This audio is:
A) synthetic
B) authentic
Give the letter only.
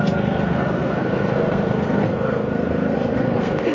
A